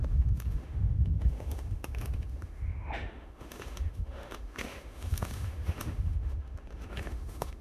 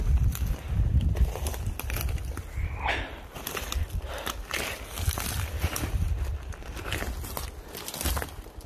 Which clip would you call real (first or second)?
second